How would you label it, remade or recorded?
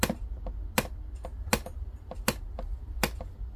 recorded